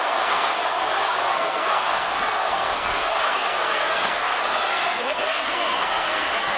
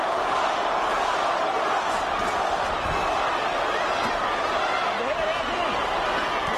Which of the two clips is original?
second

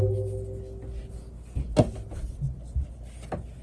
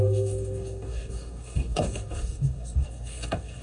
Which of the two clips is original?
first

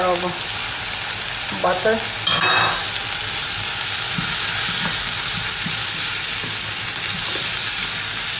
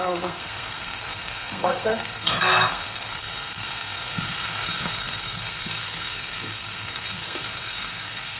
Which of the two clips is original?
first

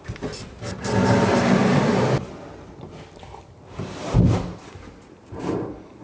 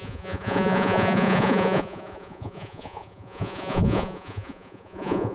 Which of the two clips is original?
first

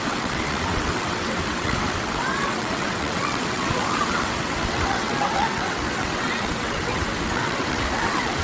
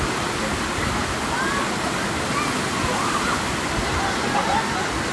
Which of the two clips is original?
second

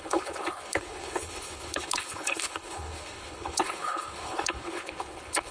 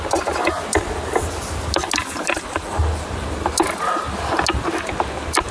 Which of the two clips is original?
second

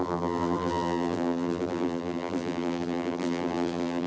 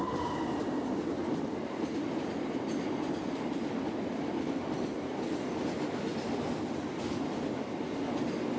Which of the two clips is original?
second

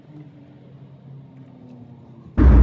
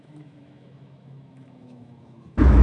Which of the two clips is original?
first